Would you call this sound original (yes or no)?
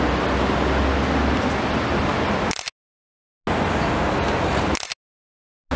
yes